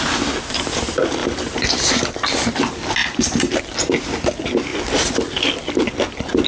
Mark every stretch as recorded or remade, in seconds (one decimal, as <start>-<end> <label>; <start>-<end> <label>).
0.0-1.2 recorded; 1.2-2.1 remade; 2.1-3.0 recorded; 3.0-3.6 remade; 3.6-6.5 recorded